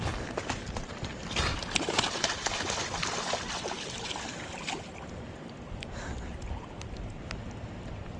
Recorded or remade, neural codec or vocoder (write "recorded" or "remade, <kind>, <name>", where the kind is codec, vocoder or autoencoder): recorded